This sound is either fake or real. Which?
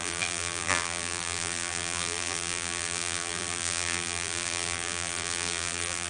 fake